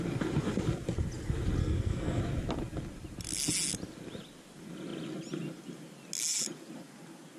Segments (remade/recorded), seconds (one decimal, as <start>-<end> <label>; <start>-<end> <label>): 0.0-1.6 recorded; 1.6-2.2 remade; 2.2-7.4 recorded